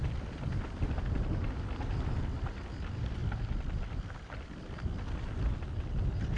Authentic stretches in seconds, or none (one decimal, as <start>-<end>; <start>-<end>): 0.0-6.4